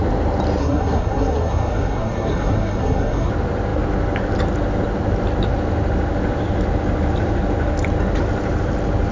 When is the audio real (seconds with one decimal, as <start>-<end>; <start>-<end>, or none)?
0.0-0.6; 3.3-9.1